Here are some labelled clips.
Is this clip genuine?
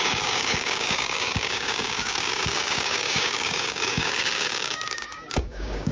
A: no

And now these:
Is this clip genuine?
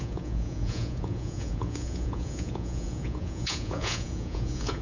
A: no